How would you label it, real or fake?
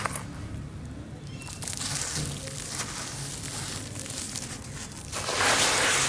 real